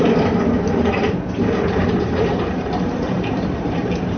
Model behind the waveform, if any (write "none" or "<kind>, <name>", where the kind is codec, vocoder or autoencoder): vocoder, BigVGAN v2